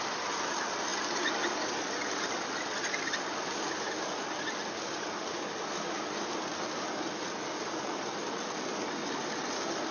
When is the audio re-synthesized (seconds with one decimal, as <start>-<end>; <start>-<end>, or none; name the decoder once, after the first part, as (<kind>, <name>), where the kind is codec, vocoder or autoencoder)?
none